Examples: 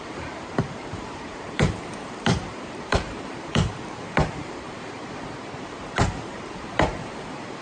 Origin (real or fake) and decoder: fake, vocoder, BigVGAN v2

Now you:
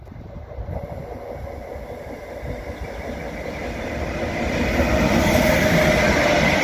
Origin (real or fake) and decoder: real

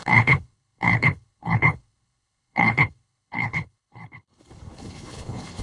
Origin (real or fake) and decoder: fake, codec, HILCodec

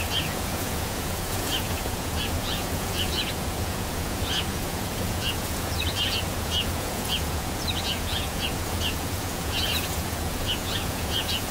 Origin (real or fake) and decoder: fake, vocoder, Vocos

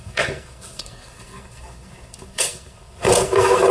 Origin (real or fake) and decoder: fake, codec, SNAC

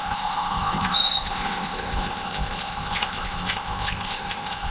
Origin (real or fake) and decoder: fake, codec, ZipCodec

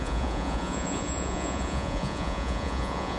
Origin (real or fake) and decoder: fake, vocoder, Vocos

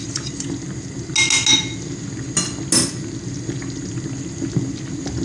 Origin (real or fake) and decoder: real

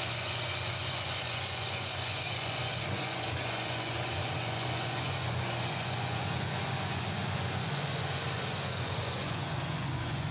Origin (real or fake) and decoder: fake, vocoder, Vocos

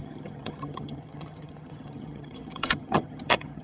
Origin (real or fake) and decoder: fake, vocoder, HiFi-GAN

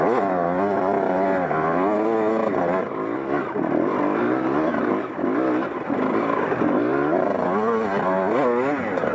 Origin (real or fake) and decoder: real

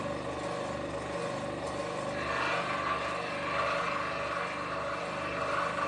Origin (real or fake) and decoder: real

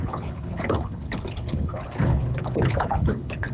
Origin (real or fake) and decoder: fake, codec, HILCodec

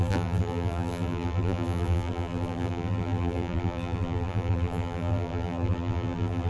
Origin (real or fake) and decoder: fake, vocoder, BigVGAN v2